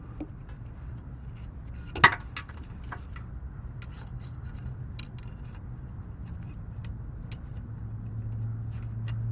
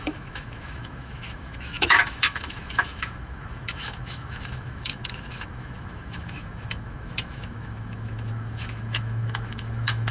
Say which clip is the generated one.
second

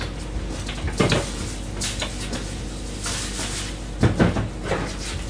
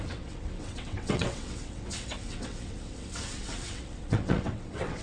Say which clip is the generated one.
second